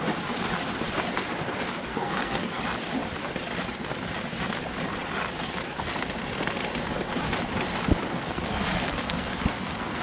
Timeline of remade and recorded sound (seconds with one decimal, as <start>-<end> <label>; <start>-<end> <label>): 0.0-1.9 recorded; 1.9-2.6 remade; 2.6-8.1 recorded; 8.1-10.0 remade